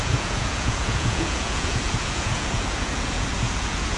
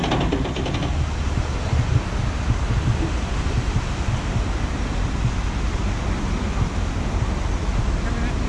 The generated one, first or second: first